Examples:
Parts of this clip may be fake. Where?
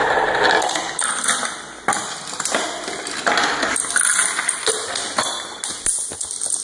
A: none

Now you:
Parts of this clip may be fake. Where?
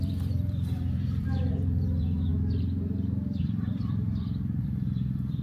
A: 0.0-2.3 (vocoder, BigVGAN v2); 3.7-5.4